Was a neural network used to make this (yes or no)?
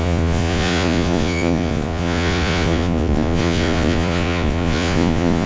yes